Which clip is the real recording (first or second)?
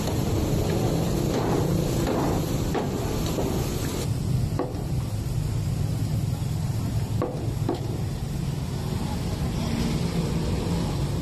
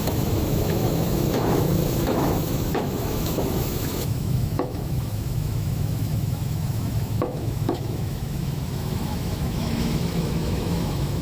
first